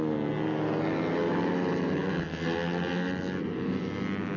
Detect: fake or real real